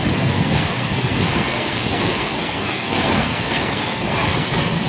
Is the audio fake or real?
fake